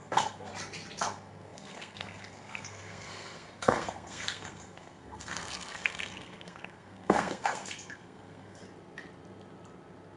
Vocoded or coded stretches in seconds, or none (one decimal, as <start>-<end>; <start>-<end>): 0.0-0.5; 1.0-8.6